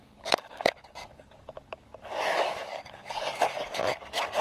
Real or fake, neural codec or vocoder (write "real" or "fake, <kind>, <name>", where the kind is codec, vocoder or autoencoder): fake, codec, DAC